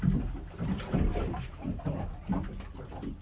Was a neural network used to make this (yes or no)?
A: no